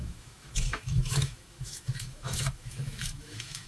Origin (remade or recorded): remade